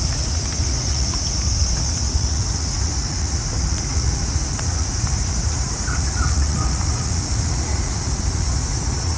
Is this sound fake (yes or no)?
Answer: yes